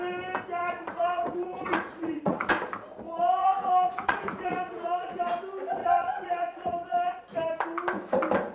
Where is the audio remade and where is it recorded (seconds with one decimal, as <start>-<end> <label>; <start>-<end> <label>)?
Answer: 0.0-0.6 recorded; 0.6-2.5 remade; 2.5-3.4 recorded; 3.4-5.2 remade; 5.2-5.8 recorded; 5.8-7.2 remade; 7.2-8.5 recorded